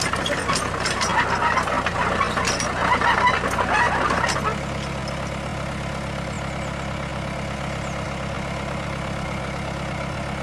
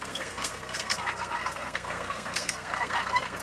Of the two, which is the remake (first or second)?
second